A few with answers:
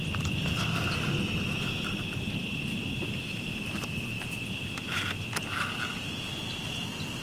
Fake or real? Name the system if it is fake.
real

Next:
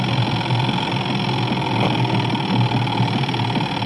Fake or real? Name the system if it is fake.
real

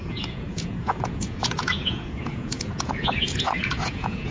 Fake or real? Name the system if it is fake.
fake, vocoder, Vocos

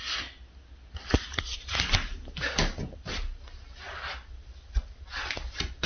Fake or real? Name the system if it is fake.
real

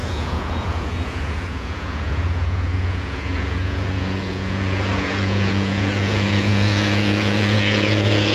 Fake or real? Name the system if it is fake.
fake, vocoder, Vocos